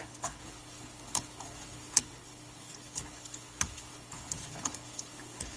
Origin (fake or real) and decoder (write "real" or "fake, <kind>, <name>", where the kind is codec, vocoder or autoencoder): fake, codec, HILCodec